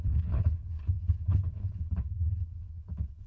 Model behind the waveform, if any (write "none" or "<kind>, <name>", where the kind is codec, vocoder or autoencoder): codec, HILCodec